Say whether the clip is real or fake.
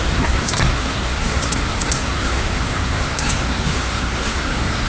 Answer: fake